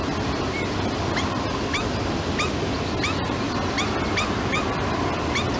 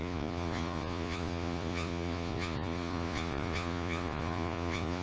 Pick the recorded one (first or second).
first